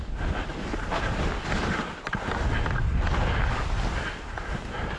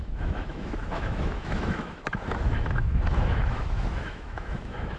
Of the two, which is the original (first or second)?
first